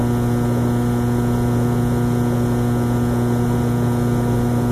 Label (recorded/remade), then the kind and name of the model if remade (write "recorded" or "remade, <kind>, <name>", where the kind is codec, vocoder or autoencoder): recorded